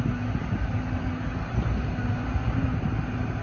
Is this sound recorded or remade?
recorded